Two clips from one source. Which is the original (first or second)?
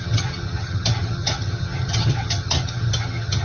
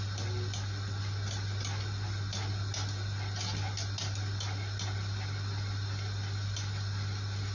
second